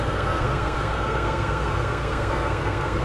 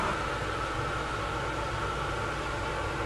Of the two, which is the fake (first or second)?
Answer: first